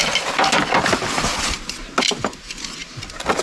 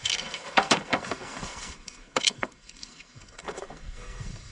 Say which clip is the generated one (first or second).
second